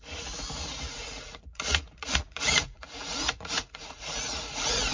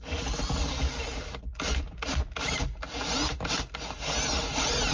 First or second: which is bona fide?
second